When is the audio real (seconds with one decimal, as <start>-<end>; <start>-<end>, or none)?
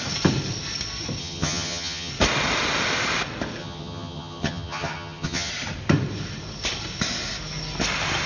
0.0-1.2; 2.1-3.6; 5.5-8.3